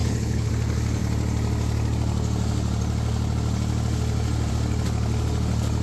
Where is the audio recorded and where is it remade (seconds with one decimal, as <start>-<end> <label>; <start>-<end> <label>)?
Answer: 0.0-0.5 remade; 0.5-5.8 recorded